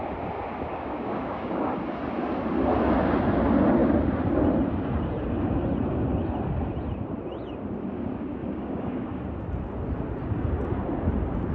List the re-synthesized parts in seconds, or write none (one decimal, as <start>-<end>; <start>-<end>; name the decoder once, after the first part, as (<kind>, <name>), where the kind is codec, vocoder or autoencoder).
0.7-1.5 (codec, DAC); 8.4-9.2